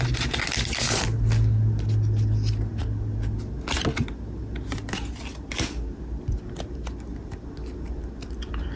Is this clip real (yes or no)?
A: yes